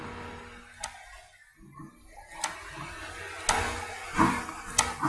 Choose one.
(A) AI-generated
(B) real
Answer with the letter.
B